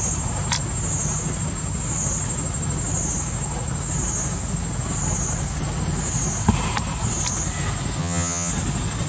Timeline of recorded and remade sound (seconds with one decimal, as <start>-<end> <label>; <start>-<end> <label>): 0.0-8.0 recorded; 8.0-8.5 remade; 8.5-9.1 recorded